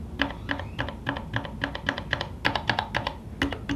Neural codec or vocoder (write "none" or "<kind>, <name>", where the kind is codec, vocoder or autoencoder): none